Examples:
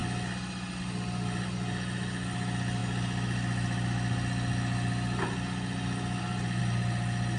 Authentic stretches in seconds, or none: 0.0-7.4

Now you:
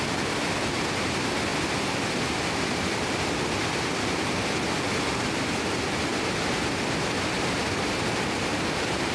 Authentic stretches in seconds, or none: 0.0-1.5; 2.6-9.1

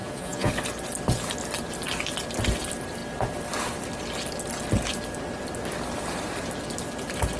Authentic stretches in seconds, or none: 0.5-7.4